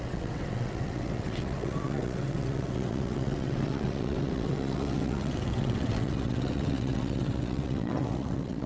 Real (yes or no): no